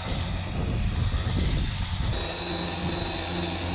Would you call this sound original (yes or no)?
yes